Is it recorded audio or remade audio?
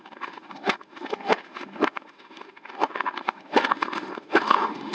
remade